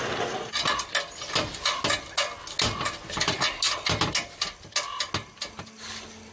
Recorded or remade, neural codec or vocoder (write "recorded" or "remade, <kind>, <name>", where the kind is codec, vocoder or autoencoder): recorded